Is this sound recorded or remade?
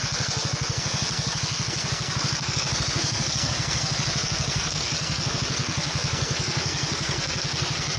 remade